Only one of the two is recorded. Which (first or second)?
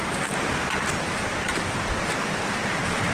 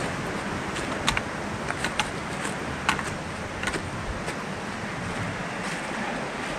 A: second